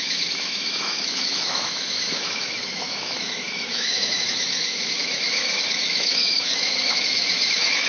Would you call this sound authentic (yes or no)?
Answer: no